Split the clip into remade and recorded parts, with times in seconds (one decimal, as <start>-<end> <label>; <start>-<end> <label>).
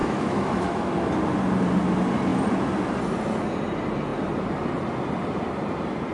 0.0-0.9 remade; 0.9-6.1 recorded